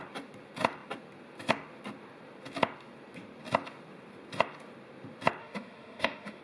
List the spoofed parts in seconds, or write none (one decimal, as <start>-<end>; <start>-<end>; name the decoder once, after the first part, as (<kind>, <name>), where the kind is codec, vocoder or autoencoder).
5.4-6.4 (autoencoder, DAC-VAE)